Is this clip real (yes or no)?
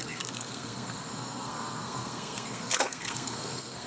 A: no